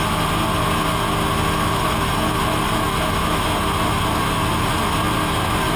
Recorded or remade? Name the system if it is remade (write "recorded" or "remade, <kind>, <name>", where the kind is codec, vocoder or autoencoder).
recorded